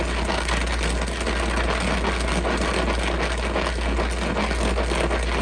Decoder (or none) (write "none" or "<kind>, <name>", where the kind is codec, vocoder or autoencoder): none